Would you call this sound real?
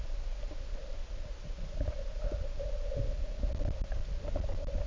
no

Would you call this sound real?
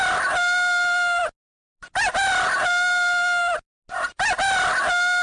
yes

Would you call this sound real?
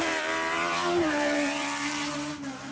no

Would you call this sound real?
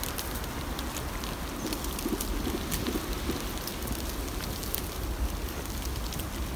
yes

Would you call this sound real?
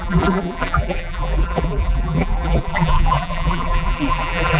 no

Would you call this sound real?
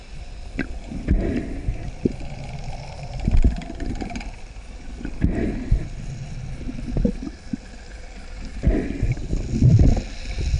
yes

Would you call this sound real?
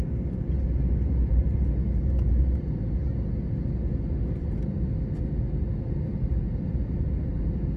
yes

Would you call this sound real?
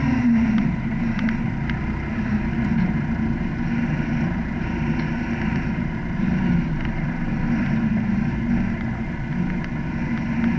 yes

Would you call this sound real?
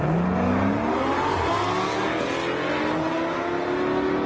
yes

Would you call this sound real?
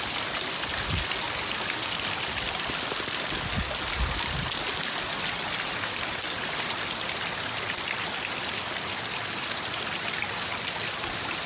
yes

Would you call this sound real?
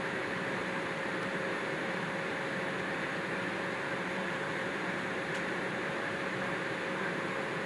no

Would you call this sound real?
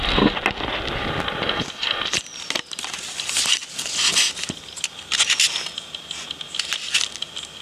yes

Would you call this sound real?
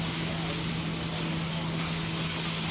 yes